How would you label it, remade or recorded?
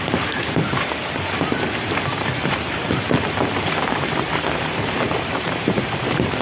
remade